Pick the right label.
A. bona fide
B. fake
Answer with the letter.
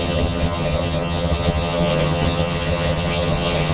B